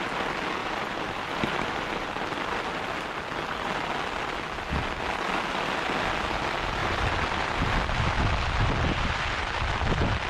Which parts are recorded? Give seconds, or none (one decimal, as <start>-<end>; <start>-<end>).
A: 0.0-0.6; 2.6-6.8